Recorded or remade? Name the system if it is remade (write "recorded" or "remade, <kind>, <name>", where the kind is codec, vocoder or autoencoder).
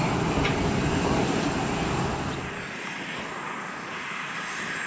recorded